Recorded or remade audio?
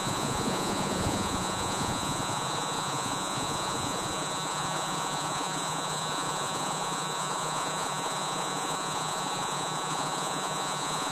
remade